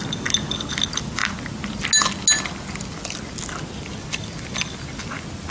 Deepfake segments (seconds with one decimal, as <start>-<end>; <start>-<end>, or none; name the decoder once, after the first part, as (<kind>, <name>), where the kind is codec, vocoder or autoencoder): none